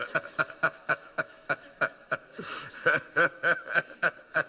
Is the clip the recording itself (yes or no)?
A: no